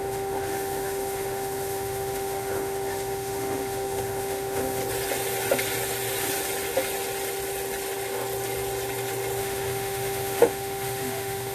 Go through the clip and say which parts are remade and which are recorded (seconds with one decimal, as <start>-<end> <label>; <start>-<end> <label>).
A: 0.0-4.8 remade; 4.8-9.4 recorded; 9.4-11.5 remade